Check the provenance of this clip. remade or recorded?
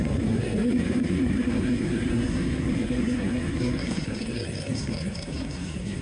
remade